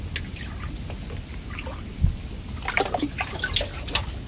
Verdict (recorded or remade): recorded